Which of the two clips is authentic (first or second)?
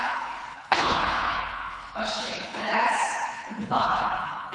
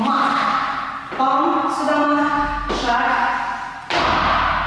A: second